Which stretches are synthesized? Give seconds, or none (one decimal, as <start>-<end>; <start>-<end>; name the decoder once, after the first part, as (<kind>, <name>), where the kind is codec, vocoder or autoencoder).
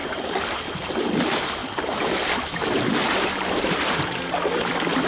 0.0-1.1 (vocoder, BigVGAN v2); 1.6-4.0